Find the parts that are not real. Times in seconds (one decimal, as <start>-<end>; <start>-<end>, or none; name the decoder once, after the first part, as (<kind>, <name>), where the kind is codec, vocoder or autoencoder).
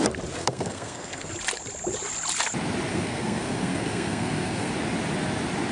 0.4-1.3 (codec, SNAC); 2.9-4.7